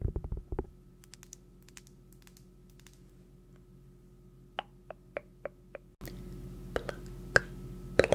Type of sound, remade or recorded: recorded